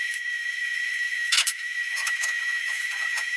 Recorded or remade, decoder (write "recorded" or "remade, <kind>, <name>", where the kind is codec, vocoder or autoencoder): remade, autoencoder, DAC-VAE